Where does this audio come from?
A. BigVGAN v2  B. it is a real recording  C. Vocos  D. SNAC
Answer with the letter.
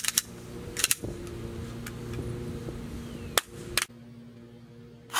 B